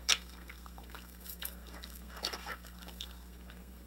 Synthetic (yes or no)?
yes